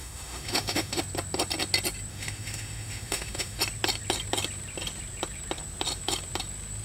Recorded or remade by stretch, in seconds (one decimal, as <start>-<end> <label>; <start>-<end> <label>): 0.0-1.0 remade; 1.0-2.1 recorded; 2.1-3.6 remade; 3.6-6.8 recorded